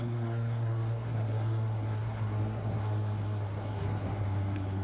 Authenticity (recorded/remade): remade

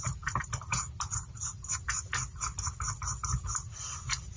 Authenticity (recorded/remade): recorded